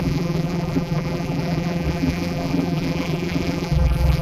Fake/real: fake